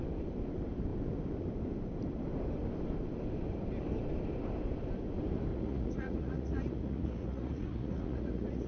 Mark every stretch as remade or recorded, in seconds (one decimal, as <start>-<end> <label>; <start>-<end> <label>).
0.0-5.5 recorded; 5.5-8.7 remade